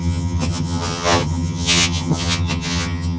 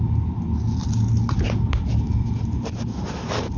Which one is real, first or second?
second